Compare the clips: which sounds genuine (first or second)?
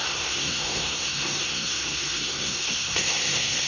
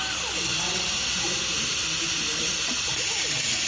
second